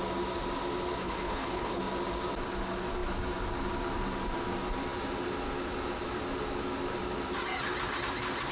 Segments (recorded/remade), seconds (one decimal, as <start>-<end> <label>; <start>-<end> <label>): 0.0-1.0 recorded; 1.0-1.8 remade; 1.8-8.5 recorded